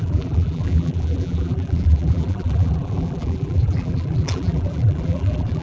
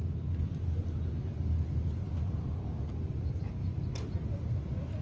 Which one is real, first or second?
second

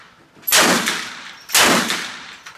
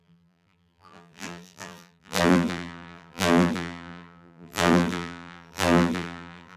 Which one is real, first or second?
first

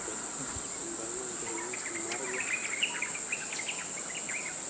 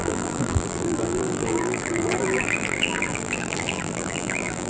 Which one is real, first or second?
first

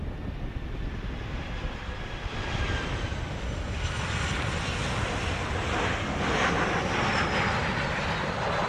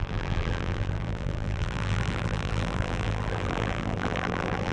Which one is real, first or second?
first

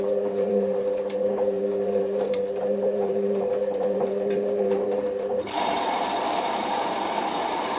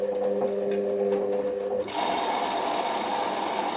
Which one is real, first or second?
second